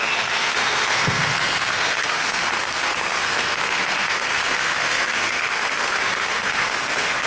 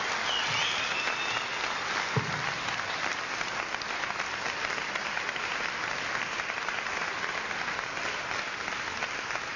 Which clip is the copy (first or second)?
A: first